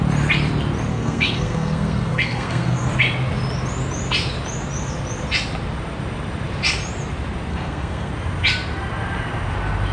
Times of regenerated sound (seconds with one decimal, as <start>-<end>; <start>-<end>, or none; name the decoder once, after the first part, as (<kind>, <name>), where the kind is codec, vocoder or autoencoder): 0.9-2.9 (codec, SNAC); 7.5-8.1

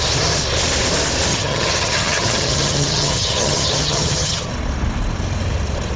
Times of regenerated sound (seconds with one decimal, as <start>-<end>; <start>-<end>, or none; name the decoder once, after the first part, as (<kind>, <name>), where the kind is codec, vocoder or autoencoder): 1.3-4.5 (vocoder, HiFi-GAN)

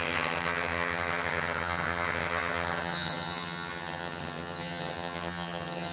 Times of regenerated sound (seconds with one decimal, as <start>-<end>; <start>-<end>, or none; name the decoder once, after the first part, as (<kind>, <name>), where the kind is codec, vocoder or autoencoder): 0.0-5.9 (vocoder, HiFi-GAN)